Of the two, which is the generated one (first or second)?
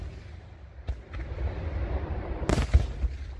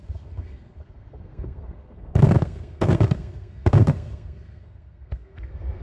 second